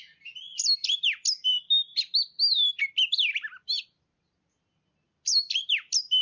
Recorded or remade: recorded